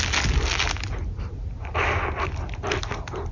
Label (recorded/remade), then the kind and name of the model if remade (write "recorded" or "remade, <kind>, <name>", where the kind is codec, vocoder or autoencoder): recorded